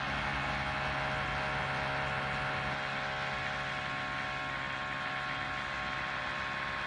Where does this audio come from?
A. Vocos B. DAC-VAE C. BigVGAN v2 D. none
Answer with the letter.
D